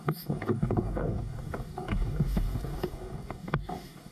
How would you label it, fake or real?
fake